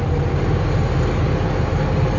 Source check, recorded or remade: recorded